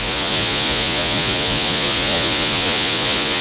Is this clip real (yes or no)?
no